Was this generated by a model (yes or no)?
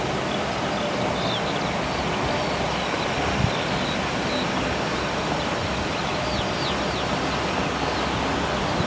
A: no